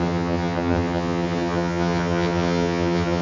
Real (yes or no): no